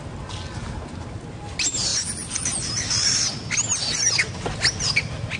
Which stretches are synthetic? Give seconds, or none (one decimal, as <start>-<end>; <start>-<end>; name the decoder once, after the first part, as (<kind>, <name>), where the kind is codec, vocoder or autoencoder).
none